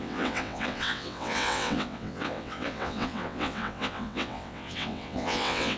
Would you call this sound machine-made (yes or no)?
yes